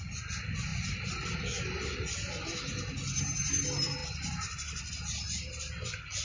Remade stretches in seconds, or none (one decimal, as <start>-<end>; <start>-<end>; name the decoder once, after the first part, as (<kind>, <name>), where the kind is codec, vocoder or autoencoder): none